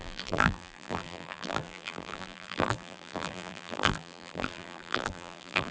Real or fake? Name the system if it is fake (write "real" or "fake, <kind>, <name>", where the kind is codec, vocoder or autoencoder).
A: fake, vocoder, BigVGAN v2